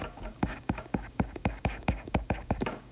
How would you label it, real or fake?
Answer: fake